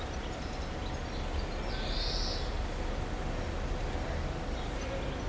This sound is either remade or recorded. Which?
recorded